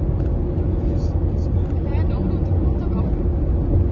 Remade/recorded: recorded